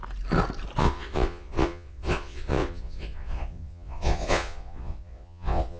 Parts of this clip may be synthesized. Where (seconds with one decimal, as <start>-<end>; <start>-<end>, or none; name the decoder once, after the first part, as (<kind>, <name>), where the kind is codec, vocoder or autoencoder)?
0.8-5.8 (vocoder, Vocos)